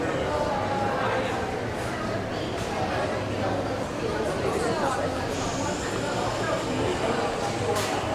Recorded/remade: recorded